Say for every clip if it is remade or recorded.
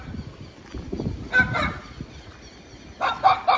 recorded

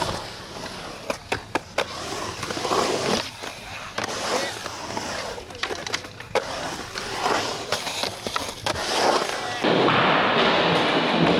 recorded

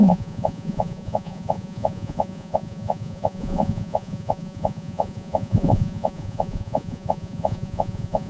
remade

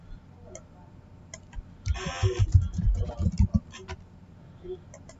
recorded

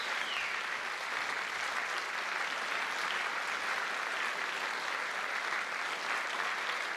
recorded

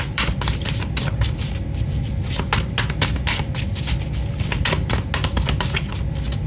recorded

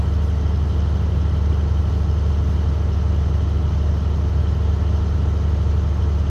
recorded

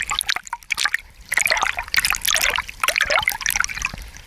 recorded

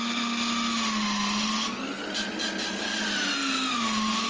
recorded